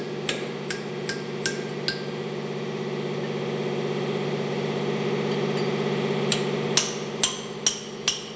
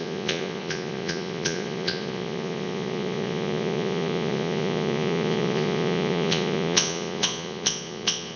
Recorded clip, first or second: first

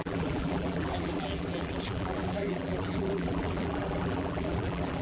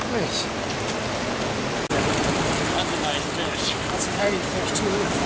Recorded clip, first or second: second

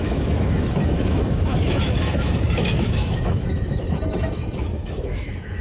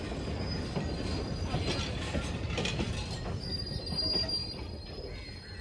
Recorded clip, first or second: second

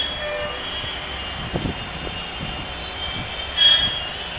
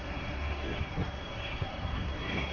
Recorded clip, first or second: first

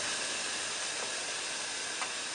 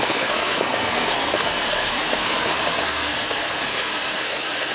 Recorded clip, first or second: first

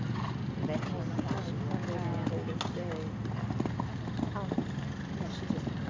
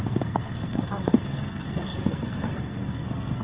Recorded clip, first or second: first